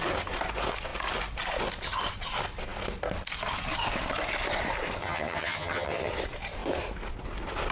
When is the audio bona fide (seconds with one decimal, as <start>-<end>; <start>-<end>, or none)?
0.0-5.0; 6.1-7.7